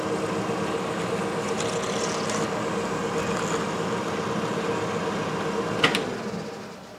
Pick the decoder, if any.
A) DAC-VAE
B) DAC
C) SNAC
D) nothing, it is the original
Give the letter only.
D